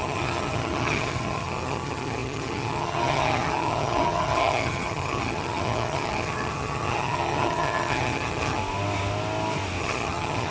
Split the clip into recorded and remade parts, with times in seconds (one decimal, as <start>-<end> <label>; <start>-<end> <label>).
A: 0.0-8.6 remade; 8.6-9.8 recorded; 9.8-10.5 remade